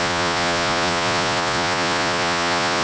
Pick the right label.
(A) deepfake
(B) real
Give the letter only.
A